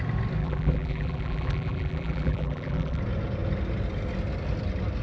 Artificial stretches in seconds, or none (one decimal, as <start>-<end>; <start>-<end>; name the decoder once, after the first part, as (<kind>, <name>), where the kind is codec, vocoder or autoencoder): 0.4-3.0 (vocoder, BigVGAN v2)